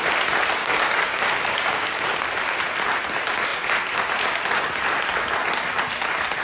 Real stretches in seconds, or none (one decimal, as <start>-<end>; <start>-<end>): 0.0-0.6; 2.0-6.4